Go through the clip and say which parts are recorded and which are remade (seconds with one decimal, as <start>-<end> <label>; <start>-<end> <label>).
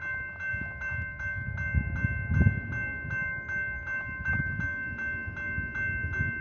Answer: 0.0-6.4 recorded